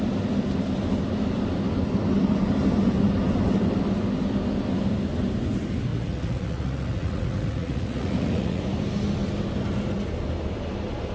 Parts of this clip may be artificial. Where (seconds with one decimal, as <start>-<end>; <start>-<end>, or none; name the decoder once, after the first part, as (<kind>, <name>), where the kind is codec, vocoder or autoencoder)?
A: 5.9-8.6 (vocoder, Vocos)